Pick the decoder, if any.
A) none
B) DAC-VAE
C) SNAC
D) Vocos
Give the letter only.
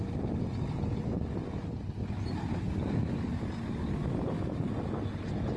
A